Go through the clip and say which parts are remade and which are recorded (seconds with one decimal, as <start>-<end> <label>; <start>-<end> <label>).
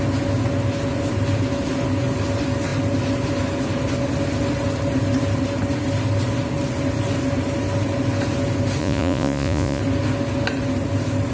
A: 0.0-8.8 recorded; 8.8-9.8 remade; 9.8-11.3 recorded